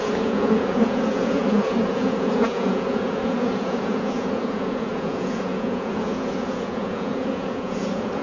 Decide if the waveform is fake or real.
fake